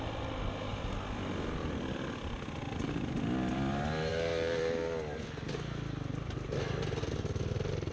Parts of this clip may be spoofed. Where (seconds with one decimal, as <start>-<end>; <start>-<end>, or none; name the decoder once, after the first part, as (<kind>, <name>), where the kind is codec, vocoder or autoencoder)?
none